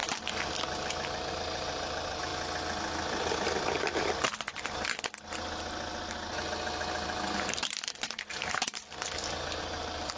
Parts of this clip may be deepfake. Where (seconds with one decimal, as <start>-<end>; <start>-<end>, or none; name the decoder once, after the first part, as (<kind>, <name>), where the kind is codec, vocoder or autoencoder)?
0.0-2.3 (vocoder, BigVGAN v2); 7.3-8.8; 9.6-10.2